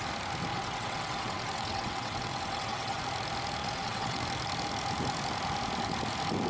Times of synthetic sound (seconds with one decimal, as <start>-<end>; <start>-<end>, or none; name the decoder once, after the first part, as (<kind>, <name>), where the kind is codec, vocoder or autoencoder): 0.5-3.0 (vocoder, WaveNeXt); 3.6-4.2